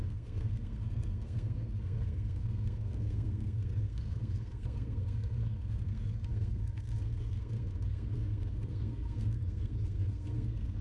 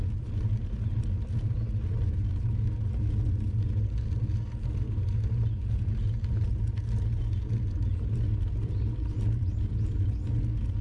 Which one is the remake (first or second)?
first